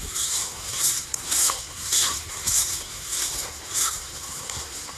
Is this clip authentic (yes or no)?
no